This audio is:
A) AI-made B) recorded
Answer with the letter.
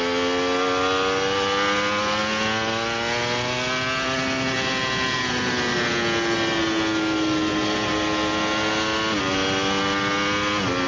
B